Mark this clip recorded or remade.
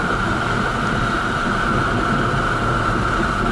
recorded